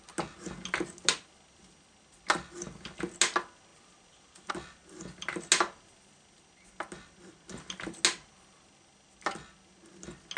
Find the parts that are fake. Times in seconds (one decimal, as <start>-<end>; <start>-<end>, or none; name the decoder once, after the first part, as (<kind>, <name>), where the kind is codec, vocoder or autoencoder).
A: none

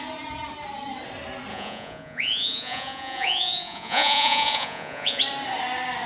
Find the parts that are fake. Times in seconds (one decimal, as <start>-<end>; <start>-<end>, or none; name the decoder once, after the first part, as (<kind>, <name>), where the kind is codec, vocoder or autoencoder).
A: 1.5-5.2 (vocoder, Vocos)

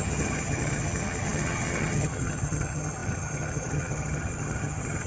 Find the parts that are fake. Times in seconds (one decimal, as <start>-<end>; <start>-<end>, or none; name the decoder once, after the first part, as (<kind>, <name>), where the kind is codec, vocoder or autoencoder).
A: 0.0-5.1 (vocoder, HiFi-GAN)